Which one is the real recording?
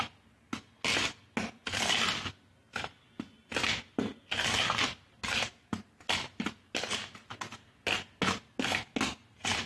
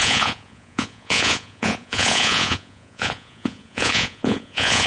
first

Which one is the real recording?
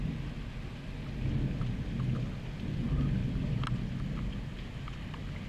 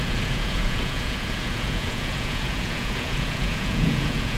first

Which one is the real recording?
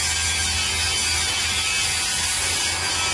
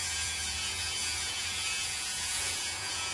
first